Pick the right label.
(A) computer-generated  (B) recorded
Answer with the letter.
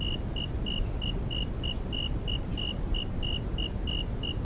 B